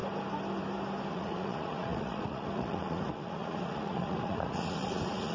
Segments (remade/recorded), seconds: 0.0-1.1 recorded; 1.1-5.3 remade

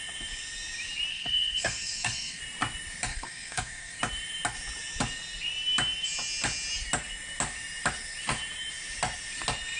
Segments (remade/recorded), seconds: 0.0-1.1 recorded; 1.1-2.4 remade; 2.4-3.1 recorded; 3.1-4.0 remade; 4.0-9.8 recorded

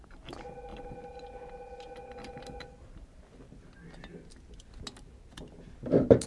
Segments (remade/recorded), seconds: 0.0-6.3 recorded